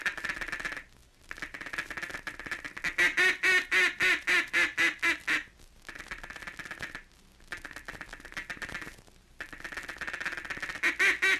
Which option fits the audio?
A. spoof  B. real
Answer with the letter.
B